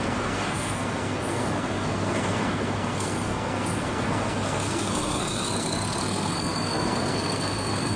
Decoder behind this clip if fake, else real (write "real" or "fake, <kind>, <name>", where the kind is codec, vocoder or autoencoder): fake, codec, SNAC